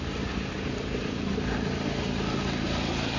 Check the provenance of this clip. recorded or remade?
recorded